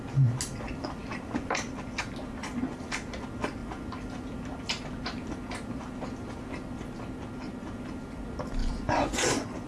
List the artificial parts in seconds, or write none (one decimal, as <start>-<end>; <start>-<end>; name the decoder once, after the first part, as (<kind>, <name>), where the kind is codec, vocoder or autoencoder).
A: 8.6-9.7 (vocoder, Vocos)